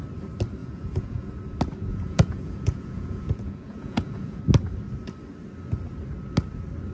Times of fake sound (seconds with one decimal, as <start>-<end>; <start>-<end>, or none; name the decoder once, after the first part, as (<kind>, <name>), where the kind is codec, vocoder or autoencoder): 0.6-1.3 (vocoder, Vocos); 1.9-4.4